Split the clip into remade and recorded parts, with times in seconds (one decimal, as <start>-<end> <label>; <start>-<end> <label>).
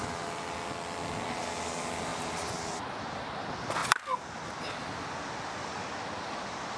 0.0-6.8 recorded